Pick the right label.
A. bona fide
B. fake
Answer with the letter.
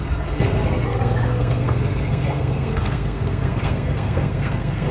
B